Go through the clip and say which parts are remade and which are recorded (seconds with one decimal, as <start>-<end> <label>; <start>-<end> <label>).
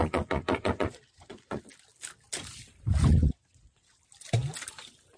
0.0-1.6 remade; 1.6-3.2 recorded; 3.2-4.0 remade; 4.0-5.2 recorded